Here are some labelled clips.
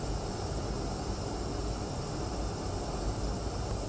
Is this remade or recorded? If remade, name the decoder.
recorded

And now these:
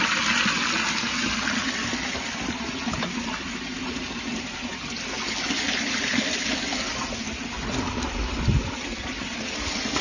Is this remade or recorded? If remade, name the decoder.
recorded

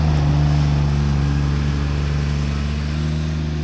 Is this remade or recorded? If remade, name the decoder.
recorded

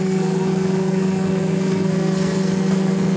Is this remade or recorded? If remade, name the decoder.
remade, codec, SNAC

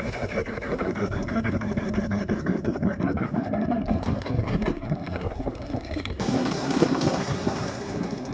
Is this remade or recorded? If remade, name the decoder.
remade, codec, SNAC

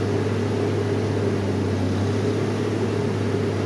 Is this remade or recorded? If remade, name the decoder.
recorded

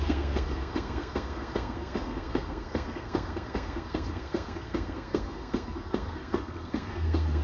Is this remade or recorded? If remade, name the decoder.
remade, codec, SNAC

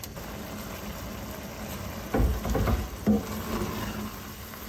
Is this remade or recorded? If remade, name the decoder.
recorded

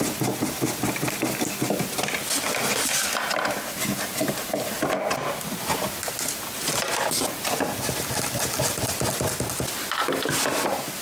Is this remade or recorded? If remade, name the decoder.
recorded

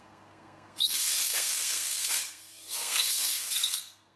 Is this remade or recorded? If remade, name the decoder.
remade, codec, SNAC